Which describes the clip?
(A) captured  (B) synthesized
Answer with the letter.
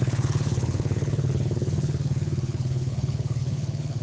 B